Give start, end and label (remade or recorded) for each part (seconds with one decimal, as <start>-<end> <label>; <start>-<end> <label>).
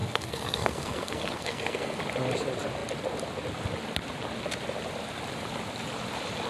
0.0-2.0 remade; 2.0-6.5 recorded